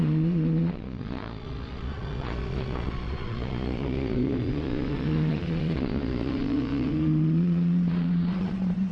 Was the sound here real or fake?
fake